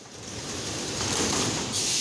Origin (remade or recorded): recorded